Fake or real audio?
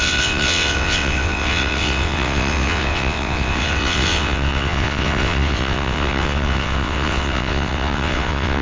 fake